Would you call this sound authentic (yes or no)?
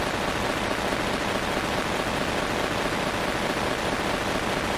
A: yes